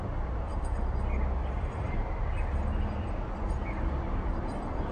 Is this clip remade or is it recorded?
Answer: recorded